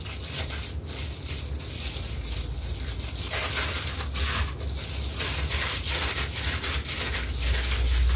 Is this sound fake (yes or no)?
no